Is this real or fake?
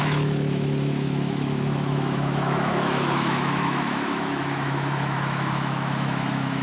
fake